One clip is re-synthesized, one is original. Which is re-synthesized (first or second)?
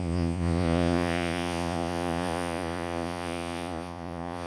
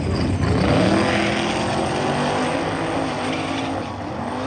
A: first